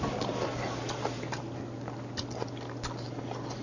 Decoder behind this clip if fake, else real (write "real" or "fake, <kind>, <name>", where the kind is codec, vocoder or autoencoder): real